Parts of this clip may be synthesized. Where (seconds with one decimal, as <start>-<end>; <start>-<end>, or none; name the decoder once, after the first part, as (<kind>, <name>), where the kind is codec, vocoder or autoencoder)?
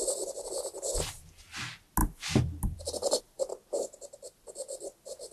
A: none